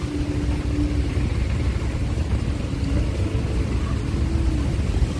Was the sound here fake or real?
real